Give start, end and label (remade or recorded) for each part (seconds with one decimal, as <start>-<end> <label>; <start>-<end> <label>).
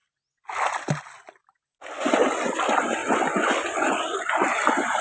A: 0.0-5.0 recorded